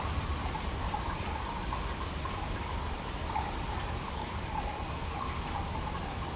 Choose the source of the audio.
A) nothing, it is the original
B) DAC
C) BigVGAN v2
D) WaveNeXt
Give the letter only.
A